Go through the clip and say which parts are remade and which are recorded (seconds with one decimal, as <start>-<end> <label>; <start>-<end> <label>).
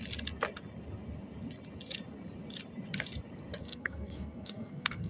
0.0-3.6 recorded; 3.6-5.1 remade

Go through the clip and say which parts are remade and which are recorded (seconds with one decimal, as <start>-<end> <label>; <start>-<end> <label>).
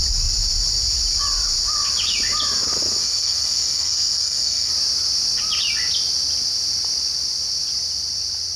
0.0-3.0 recorded; 3.0-4.7 remade; 4.7-8.6 recorded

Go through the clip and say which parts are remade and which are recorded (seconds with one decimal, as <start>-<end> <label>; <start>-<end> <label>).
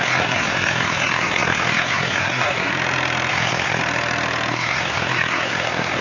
0.0-2.7 remade; 2.7-3.3 recorded; 3.3-3.8 remade; 3.8-4.5 recorded; 4.5-6.0 remade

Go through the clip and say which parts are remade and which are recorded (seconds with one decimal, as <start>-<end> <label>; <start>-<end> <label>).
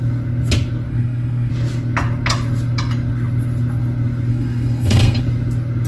0.0-0.9 recorded; 0.9-1.5 remade; 1.5-4.3 recorded; 4.3-5.2 remade; 5.2-5.9 recorded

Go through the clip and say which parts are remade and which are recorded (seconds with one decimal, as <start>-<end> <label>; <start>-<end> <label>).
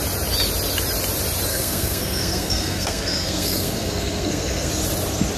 0.0-1.5 recorded; 1.5-4.7 remade; 4.7-5.4 recorded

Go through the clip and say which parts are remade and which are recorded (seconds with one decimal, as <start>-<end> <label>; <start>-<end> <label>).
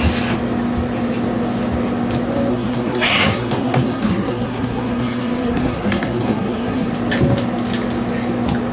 0.0-2.5 recorded; 2.5-6.9 remade; 6.9-8.7 recorded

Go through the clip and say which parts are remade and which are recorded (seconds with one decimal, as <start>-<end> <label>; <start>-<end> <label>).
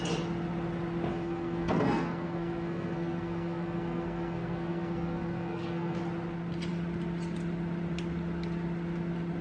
0.0-1.1 recorded; 1.1-6.0 remade; 6.0-9.4 recorded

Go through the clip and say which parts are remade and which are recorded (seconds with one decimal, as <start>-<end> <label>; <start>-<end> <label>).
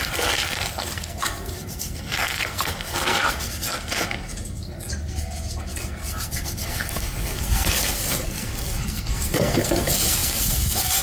0.0-11.0 remade